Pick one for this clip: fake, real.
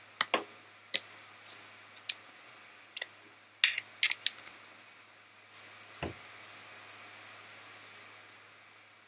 real